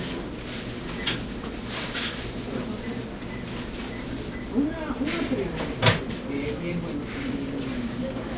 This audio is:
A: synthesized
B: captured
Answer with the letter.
B